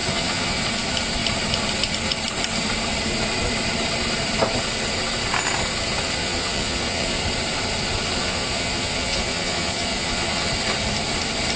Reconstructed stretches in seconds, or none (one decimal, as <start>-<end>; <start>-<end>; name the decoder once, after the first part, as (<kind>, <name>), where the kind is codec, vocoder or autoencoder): 0.0-0.6 (vocoder, Vocos); 6.2-7.2; 8.2-10.5